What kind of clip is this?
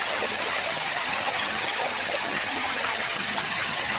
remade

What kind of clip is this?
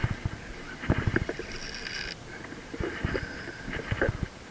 recorded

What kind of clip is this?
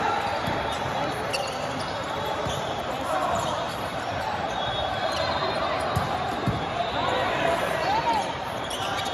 remade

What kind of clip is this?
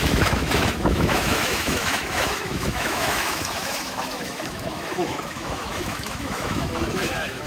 remade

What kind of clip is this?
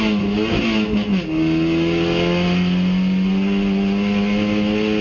recorded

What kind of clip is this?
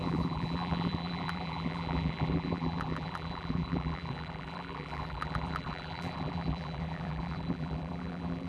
remade